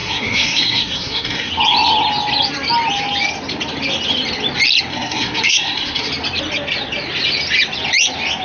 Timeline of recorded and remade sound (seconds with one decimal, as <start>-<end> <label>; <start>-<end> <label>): 0.0-1.5 remade; 1.5-4.9 recorded; 4.9-6.1 remade; 6.1-8.4 recorded